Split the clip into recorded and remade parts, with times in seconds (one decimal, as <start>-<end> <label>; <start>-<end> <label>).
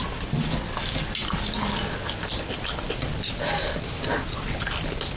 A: 0.0-5.2 recorded